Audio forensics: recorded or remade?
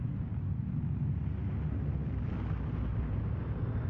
recorded